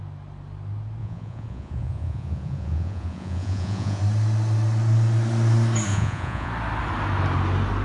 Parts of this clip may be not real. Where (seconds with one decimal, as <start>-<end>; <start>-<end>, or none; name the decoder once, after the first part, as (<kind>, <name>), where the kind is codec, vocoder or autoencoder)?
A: 1.0-4.0 (vocoder, Vocos); 5.9-6.5

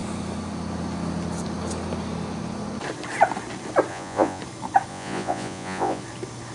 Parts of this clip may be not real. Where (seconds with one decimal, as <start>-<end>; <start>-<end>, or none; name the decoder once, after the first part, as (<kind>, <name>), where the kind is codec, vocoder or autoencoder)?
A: 3.9-4.4 (vocoder, Vocos); 4.9-6.0

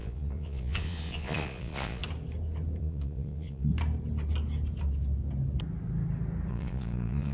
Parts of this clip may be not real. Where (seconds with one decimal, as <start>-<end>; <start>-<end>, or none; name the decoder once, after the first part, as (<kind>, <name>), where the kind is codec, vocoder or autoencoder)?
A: 0.0-2.0 (vocoder, Vocos); 2.8-3.7; 6.5-7.3

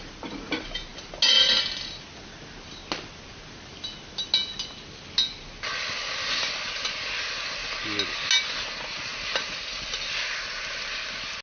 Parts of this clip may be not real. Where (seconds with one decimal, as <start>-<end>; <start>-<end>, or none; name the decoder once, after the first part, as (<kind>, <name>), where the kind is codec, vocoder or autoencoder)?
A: none

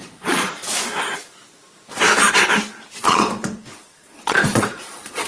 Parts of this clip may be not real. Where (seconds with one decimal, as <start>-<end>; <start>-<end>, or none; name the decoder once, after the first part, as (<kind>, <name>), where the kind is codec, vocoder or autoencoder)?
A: 0.0-0.6 (vocoder, Vocos); 3.0-5.3

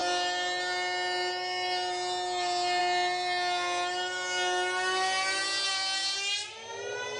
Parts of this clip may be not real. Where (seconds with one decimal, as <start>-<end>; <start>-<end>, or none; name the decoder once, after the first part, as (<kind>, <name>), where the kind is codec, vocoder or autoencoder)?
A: none